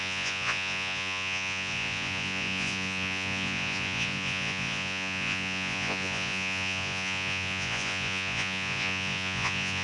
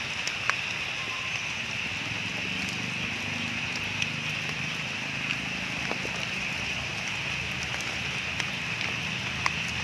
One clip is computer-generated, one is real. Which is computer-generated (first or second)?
first